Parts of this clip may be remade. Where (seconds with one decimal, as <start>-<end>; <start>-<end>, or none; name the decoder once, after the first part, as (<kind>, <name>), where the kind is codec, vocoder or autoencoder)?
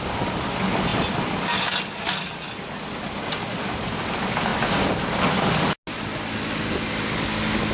none